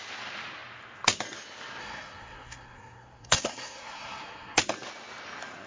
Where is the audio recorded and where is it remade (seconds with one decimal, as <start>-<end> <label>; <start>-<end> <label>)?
0.0-1.8 recorded; 1.8-4.6 remade; 4.6-5.7 recorded